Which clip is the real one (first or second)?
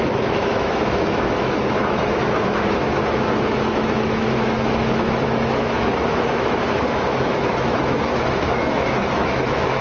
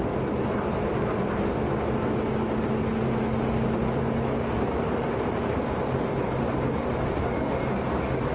second